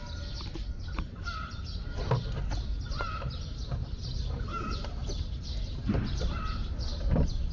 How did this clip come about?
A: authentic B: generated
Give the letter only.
A